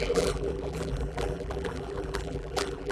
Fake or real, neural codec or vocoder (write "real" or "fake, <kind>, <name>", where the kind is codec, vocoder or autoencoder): fake, vocoder, BigVGAN v2